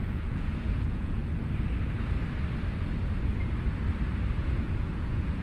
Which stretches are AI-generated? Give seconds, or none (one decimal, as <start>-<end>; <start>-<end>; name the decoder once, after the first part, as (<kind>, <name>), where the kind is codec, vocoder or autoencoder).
0.0-1.2 (vocoder, Vocos); 4.4-5.4